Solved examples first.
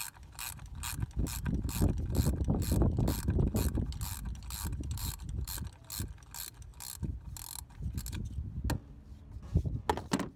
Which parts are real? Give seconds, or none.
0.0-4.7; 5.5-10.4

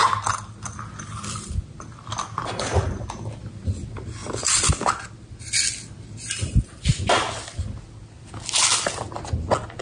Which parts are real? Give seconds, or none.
0.0-4.2; 4.7-9.8

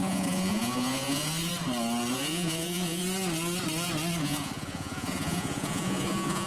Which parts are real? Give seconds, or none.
1.5-2.1; 3.0-4.2

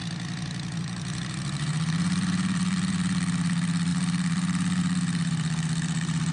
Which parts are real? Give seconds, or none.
0.0-0.8

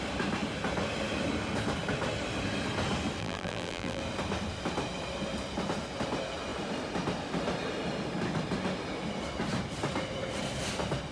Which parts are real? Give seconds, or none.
0.0-3.2; 4.0-11.1

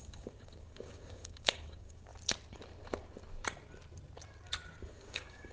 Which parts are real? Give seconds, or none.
2.1-4.9